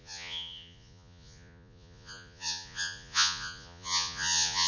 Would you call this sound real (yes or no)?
no